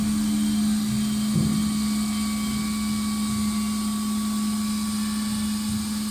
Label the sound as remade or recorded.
recorded